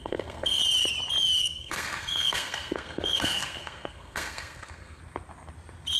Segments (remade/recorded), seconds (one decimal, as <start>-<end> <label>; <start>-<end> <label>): 0.0-0.6 remade; 0.6-1.4 recorded; 1.4-5.0 remade; 5.0-6.0 recorded